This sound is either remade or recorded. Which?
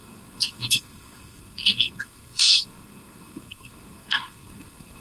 remade